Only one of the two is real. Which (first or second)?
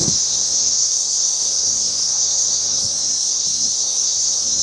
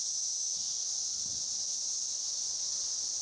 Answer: second